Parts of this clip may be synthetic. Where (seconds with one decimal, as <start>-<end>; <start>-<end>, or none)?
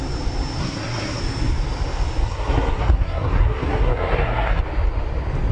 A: 0.6-1.2; 2.2-4.6